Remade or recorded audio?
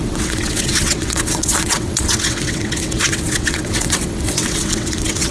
remade